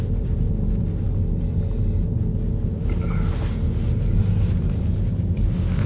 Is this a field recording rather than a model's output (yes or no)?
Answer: yes